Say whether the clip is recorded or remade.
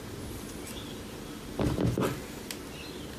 recorded